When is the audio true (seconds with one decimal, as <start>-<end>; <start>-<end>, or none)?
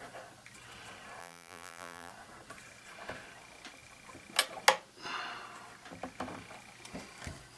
0.0-1.2; 2.1-7.6